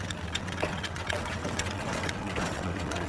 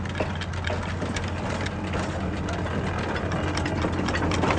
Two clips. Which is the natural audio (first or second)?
second